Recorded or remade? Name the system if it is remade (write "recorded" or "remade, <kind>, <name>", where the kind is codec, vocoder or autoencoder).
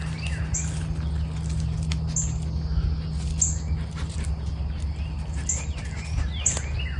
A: recorded